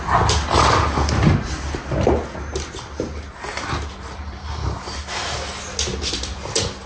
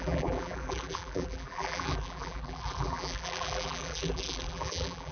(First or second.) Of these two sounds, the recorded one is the first